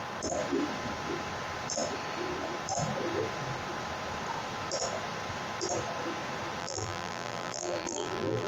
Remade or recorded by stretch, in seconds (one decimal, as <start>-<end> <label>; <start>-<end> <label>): 0.0-6.6 recorded; 6.6-8.5 remade

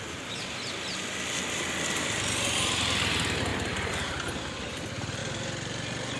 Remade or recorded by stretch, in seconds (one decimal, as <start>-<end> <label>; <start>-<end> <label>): 0.0-3.5 recorded; 3.5-4.1 remade; 4.1-6.2 recorded

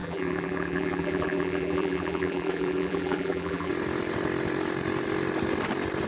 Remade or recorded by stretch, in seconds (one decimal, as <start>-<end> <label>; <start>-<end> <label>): 0.0-3.7 remade; 3.7-6.1 recorded